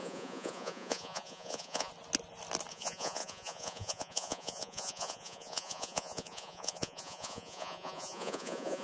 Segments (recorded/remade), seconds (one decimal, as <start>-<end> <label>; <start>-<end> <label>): 0.0-1.9 remade; 1.9-2.7 recorded; 2.7-8.8 remade